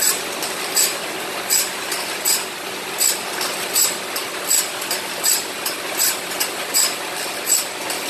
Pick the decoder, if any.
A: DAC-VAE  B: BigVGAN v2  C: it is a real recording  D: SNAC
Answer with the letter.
C